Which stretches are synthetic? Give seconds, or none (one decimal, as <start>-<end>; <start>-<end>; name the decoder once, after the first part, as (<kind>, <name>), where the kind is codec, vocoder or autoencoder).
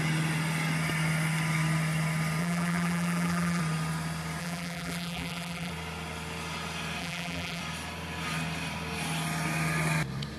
2.4-3.6 (vocoder, BigVGAN v2); 4.4-5.7; 7.0-7.6